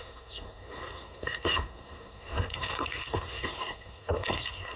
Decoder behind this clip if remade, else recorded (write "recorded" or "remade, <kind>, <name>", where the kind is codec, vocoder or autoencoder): remade, codec, SNAC